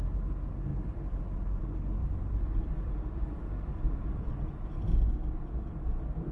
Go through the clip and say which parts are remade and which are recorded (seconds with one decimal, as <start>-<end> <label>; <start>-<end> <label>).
0.0-0.7 recorded; 0.7-1.2 remade; 1.2-2.0 recorded; 2.0-4.3 remade; 4.3-5.2 recorded; 5.2-6.3 remade